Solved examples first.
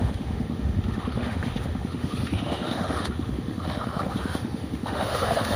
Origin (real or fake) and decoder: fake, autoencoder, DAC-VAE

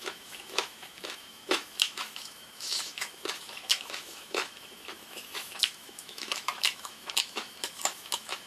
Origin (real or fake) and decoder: fake, autoencoder, DAC-VAE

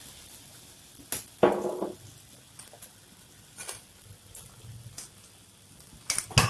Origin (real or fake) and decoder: real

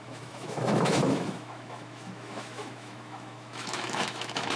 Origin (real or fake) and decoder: fake, autoencoder, DAC-VAE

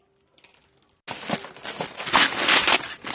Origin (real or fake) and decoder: real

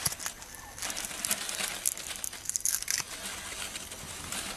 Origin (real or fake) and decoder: real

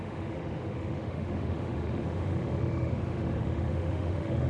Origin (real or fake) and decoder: fake, autoencoder, DAC-VAE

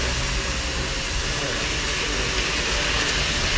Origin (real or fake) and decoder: real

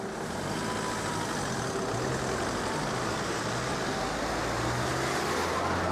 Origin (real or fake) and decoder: real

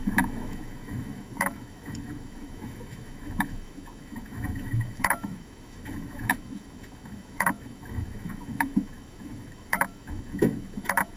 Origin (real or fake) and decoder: fake, autoencoder, DAC-VAE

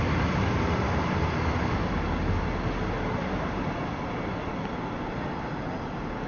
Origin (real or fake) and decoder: real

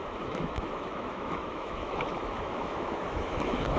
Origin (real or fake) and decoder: fake, autoencoder, DAC-VAE